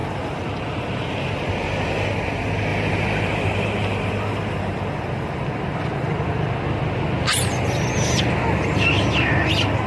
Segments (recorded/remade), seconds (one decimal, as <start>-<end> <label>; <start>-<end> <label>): 0.0-2.7 recorded; 2.7-4.1 remade; 4.1-9.9 recorded